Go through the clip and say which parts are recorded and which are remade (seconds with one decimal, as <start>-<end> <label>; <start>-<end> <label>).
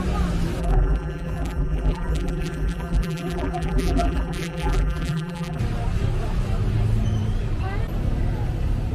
0.0-0.6 recorded; 0.6-5.6 remade; 5.6-8.9 recorded